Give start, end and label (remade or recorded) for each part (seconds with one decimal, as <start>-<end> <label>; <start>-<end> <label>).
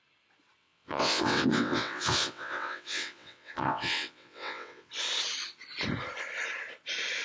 0.0-0.6 recorded; 0.6-4.9 remade; 4.9-7.2 recorded